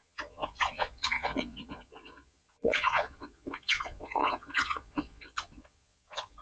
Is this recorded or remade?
remade